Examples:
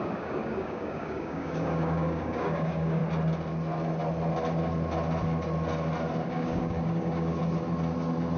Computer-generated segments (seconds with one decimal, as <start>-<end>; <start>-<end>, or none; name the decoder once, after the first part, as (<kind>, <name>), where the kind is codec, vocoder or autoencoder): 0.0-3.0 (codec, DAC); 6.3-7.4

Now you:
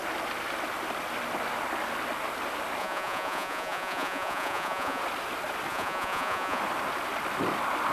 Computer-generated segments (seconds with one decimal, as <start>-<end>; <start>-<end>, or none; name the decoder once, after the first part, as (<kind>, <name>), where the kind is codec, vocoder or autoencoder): 2.8-5.0 (vocoder, Vocos); 5.7-6.6

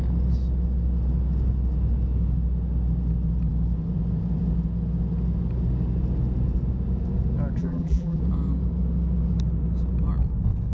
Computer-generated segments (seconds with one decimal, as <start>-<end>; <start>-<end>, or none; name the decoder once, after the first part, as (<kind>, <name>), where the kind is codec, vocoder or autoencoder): 7.6-8.2 (vocoder, BigVGAN v2)

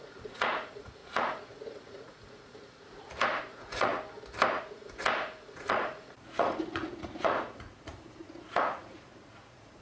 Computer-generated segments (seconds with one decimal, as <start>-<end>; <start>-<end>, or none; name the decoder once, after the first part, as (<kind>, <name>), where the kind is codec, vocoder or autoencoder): 0.0-3.9 (vocoder, Vocos); 4.6-9.8

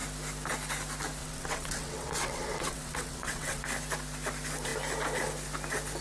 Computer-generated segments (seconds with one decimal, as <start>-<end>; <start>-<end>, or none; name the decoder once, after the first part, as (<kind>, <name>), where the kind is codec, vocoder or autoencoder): 1.2-3.6 (vocoder, WaveNeXt)

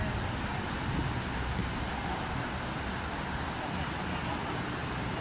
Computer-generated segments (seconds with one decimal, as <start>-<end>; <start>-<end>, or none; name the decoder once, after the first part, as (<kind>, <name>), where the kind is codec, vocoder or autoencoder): none

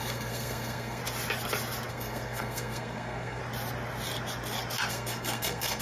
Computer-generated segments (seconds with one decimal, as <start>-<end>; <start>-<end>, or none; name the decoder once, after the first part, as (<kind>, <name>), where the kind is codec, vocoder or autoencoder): 0.0-1.0 (codec, SNAC); 1.9-3.4; 4.9-5.8